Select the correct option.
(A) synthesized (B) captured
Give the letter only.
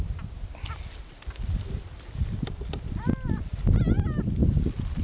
B